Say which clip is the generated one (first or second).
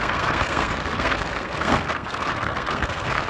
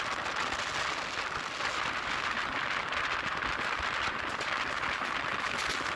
first